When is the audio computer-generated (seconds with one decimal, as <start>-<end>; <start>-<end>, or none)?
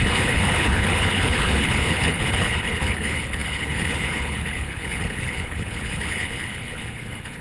0.0-7.4